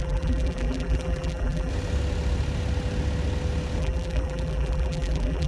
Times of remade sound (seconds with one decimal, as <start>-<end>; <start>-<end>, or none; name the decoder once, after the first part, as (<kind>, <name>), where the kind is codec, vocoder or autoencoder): 0.0-1.7 (vocoder, BigVGAN v2); 3.8-5.5